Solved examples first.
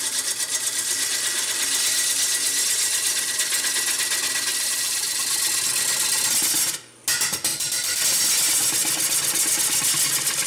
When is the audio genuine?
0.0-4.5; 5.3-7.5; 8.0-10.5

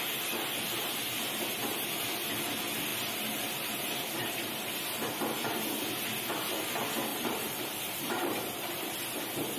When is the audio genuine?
0.0-2.9; 4.7-7.1; 8.9-9.6

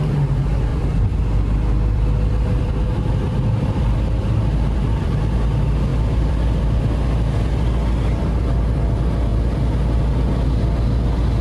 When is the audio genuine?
0.0-0.7; 5.2-5.9; 6.6-11.4

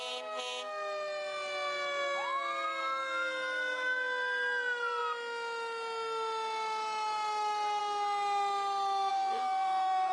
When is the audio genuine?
0.0-9.1

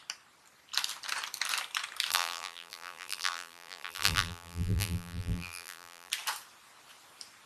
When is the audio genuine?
0.0-2.1; 6.1-7.5

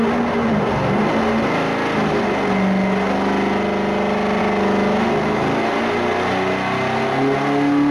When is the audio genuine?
0.0-7.9